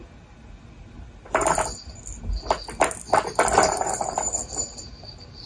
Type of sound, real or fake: real